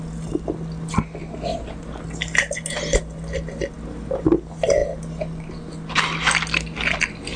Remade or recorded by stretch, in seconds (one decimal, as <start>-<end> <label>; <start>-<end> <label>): 0.0-7.4 recorded